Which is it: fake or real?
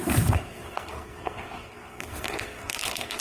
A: fake